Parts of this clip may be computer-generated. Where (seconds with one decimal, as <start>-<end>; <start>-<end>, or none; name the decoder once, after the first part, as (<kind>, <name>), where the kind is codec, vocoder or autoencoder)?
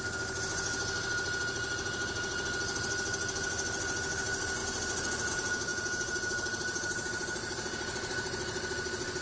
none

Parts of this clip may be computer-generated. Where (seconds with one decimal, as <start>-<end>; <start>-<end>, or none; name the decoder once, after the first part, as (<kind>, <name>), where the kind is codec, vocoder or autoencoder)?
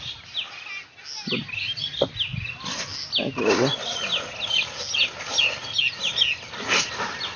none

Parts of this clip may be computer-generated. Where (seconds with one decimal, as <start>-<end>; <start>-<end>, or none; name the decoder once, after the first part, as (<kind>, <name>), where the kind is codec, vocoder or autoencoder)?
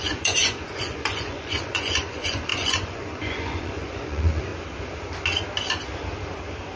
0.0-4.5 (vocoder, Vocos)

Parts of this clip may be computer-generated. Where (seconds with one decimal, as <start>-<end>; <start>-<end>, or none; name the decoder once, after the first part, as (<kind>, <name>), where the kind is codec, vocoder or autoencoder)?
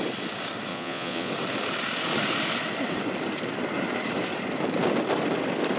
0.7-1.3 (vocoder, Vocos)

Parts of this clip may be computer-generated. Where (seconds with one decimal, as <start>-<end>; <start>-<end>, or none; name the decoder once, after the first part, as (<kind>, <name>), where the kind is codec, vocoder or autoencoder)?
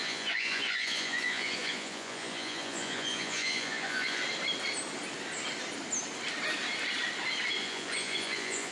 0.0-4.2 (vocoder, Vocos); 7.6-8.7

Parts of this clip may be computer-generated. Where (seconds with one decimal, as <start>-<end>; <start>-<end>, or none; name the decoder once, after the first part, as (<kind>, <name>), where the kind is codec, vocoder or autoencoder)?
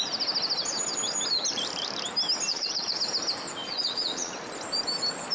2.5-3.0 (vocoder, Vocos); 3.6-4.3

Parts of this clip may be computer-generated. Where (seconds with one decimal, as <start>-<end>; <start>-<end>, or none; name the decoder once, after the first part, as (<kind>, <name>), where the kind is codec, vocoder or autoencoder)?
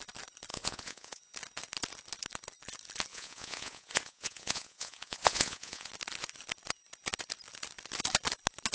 0.5-1.2 (vocoder, Vocos); 3.1-5.9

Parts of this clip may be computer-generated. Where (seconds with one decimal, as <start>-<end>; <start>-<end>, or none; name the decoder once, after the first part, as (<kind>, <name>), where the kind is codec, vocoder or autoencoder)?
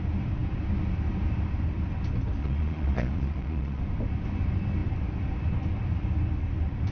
2.4-3.8 (vocoder, Vocos)